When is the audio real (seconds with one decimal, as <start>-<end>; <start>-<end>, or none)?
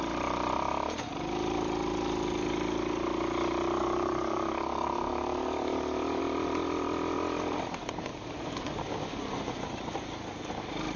0.0-3.8; 6.2-8.1; 8.8-11.0